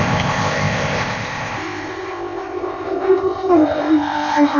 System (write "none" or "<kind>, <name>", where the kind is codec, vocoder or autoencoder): codec, ZipCodec